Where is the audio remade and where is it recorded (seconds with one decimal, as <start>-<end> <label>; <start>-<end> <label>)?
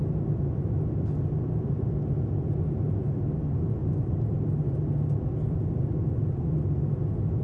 0.0-3.8 recorded; 3.8-4.9 remade; 4.9-7.4 recorded